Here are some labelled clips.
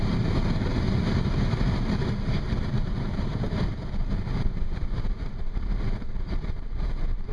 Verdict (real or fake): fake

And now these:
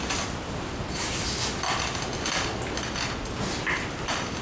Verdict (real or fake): real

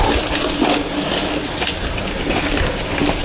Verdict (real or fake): real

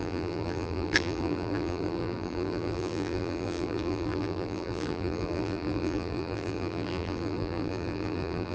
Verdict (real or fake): fake